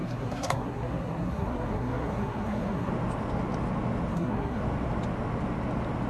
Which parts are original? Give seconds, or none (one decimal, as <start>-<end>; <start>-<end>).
2.9-4.1; 4.6-6.1